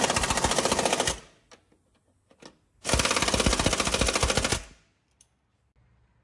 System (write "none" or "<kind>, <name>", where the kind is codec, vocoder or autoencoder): none